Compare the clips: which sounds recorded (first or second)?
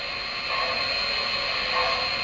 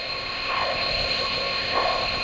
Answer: first